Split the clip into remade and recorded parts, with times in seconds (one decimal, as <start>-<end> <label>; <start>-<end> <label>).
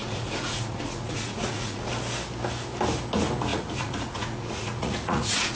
0.0-1.9 remade; 1.9-3.5 recorded; 3.5-5.6 remade